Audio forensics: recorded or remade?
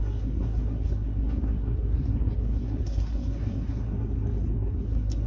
remade